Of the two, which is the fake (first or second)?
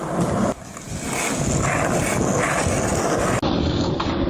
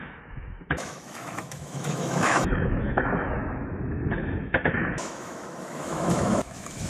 second